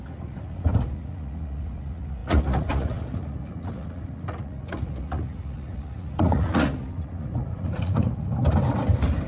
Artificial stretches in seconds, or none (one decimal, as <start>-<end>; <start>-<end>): 0.0-8.4